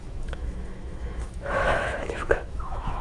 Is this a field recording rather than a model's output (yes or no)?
no